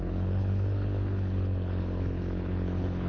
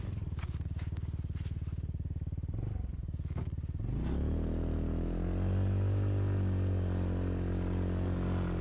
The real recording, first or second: second